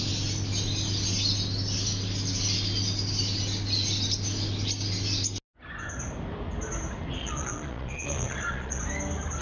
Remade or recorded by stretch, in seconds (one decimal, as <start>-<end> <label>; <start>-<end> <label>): 0.0-7.2 recorded; 7.2-8.8 remade; 8.8-9.4 recorded